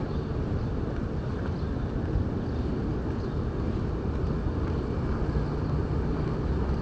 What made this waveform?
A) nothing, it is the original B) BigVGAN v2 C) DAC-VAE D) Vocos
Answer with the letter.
A